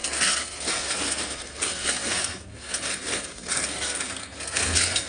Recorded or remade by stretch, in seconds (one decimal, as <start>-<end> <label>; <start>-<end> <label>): 0.0-5.1 remade